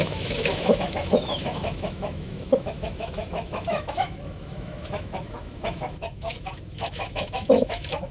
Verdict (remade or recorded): remade